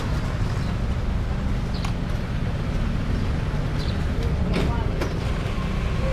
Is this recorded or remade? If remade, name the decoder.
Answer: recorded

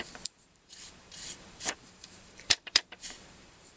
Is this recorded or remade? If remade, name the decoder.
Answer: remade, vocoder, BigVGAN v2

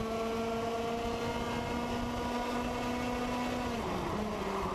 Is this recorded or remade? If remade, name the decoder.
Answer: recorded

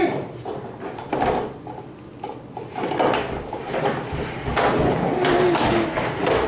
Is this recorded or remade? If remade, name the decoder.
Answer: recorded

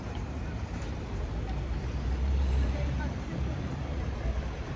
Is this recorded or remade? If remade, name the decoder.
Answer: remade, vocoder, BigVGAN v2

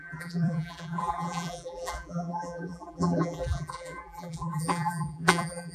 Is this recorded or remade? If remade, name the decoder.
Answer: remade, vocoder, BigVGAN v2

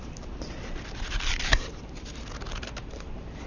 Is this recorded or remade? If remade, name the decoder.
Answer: remade, vocoder, BigVGAN v2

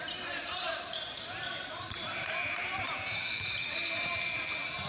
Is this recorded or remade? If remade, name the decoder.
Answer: remade, vocoder, BigVGAN v2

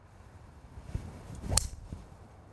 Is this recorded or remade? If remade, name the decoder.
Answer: remade, vocoder, BigVGAN v2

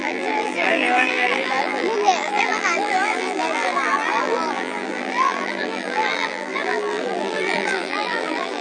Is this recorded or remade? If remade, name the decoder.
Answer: remade, vocoder, BigVGAN v2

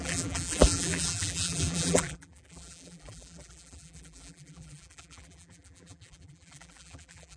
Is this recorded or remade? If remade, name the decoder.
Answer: remade, vocoder, BigVGAN v2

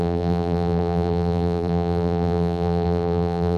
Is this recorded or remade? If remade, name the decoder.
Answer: remade, vocoder, BigVGAN v2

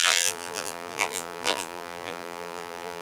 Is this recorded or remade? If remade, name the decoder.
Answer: remade, vocoder, BigVGAN v2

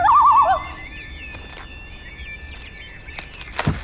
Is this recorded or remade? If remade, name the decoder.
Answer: recorded